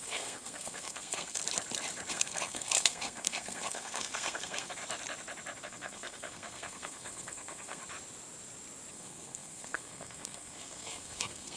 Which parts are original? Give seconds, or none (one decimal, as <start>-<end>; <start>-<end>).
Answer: 1.4-2.1; 4.8-5.6; 7.8-8.9